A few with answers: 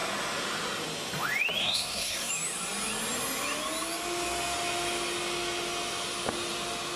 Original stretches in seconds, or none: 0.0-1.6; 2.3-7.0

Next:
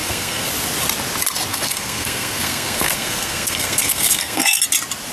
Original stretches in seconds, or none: 0.5-1.5; 4.6-5.1

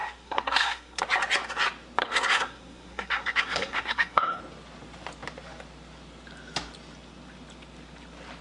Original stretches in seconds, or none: 1.0-2.0; 4.4-8.4